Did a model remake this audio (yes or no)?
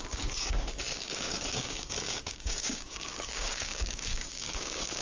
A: yes